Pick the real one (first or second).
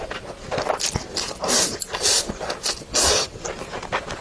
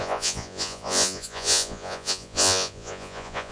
first